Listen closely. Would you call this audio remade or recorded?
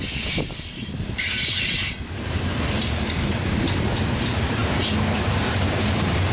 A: recorded